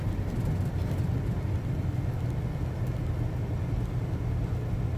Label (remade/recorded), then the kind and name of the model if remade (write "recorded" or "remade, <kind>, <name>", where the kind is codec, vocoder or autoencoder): recorded